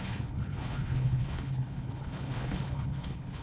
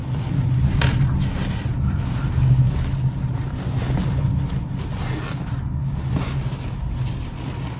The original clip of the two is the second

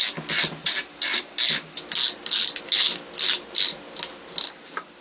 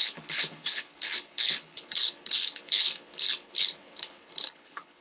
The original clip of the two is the first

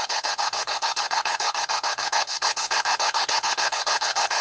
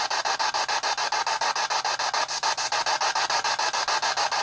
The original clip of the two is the second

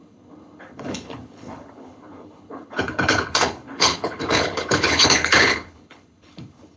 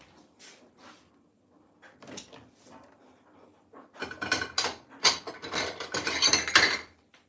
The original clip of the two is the second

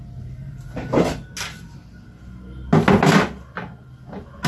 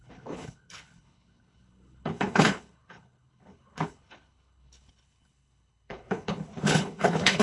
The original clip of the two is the first